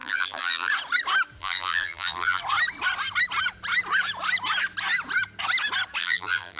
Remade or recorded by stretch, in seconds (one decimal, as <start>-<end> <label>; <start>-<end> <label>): 0.0-0.7 remade; 0.7-1.4 recorded; 1.4-2.4 remade; 2.4-6.0 recorded; 6.0-6.6 remade